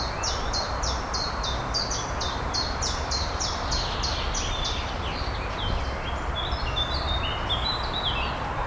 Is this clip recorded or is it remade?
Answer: recorded